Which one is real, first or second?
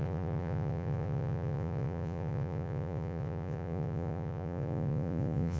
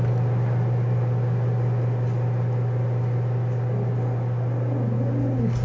second